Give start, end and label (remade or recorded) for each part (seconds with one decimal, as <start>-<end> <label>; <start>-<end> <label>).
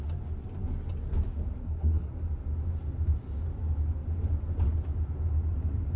0.0-1.6 recorded; 1.6-2.1 remade; 2.1-6.0 recorded